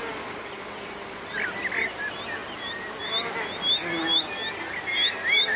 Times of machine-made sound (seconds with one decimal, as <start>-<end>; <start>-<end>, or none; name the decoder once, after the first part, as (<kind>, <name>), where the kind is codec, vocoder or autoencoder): none